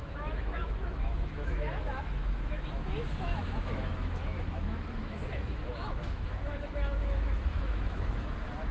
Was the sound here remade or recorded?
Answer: remade